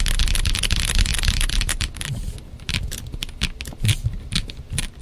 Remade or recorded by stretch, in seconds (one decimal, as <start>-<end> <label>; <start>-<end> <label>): 0.0-5.0 recorded